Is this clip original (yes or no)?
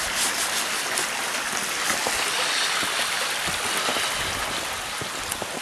yes